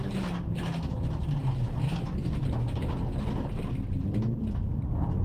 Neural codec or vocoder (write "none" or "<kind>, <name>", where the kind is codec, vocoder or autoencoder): none